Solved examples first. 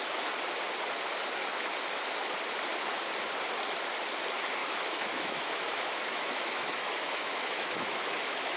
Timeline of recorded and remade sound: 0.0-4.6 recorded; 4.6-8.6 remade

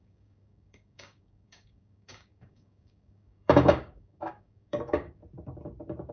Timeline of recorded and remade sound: 0.0-5.2 remade; 5.2-6.1 recorded

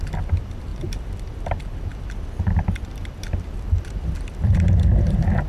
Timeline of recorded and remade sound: 0.0-0.7 recorded; 0.7-1.3 remade; 1.3-1.9 recorded; 1.9-4.7 remade; 4.7-5.5 recorded

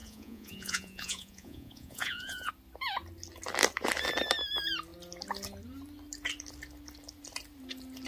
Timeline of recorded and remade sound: 0.0-2.5 remade; 2.5-8.1 recorded

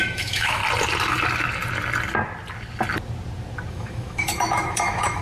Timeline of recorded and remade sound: 0.0-0.6 remade; 0.6-3.7 recorded; 3.7-5.2 remade

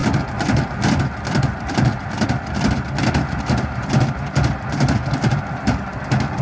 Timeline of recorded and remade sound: 0.0-6.4 recorded